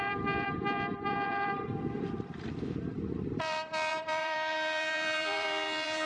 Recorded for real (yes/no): no